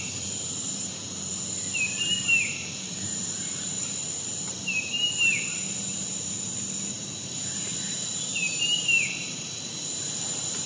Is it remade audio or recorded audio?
remade